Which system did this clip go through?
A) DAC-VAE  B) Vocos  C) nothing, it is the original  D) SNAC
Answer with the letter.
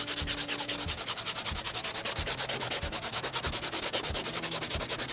C